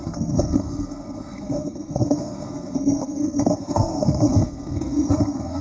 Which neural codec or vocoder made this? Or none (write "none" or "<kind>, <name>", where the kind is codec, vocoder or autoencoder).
codec, SNAC